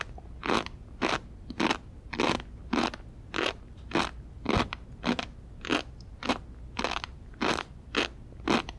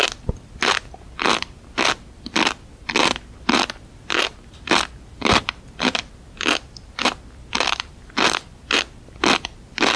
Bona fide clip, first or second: first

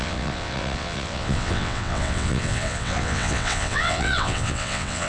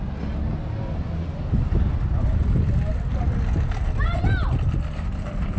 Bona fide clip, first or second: second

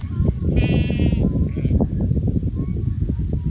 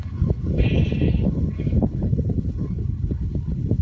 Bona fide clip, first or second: first